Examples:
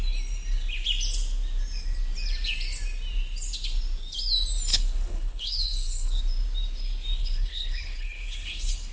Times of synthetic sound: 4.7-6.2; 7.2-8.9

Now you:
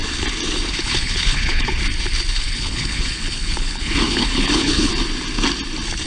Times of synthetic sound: 0.7-1.8; 2.3-4.9

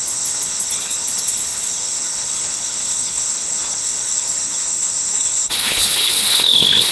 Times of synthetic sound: 0.0-6.9